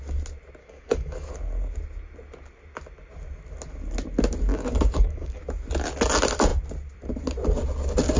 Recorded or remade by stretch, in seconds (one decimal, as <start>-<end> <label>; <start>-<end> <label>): 0.0-0.6 recorded; 0.6-1.3 remade; 1.3-4.5 recorded; 4.5-5.4 remade; 5.4-8.2 recorded